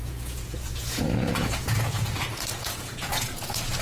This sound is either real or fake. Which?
fake